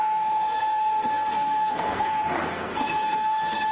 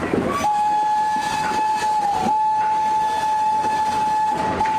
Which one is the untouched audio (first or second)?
second